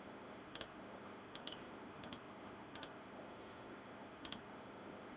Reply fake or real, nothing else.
fake